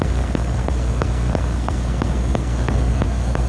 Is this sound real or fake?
fake